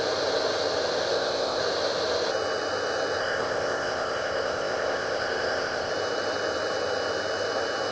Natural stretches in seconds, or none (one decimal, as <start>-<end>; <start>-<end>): 0.0-1.1; 1.6-3.2; 5.9-7.9